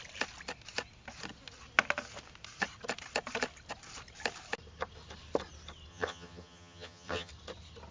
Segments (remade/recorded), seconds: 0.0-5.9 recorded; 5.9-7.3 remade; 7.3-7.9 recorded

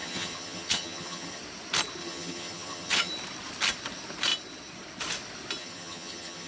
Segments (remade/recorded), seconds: 0.0-1.4 remade; 1.4-2.0 recorded; 2.0-3.1 remade; 3.1-5.6 recorded; 5.6-6.5 remade

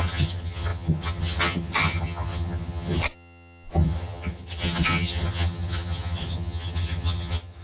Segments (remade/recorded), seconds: 0.0-7.6 remade

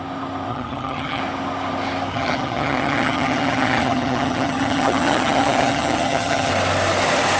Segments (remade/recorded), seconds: 0.0-0.5 recorded; 0.5-1.2 remade; 1.2-2.1 recorded; 2.1-6.5 remade; 6.5-7.4 recorded

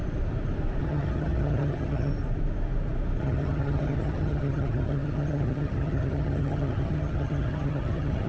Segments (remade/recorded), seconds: 0.0-0.8 recorded; 0.8-2.1 remade; 2.1-3.2 recorded; 3.2-8.3 remade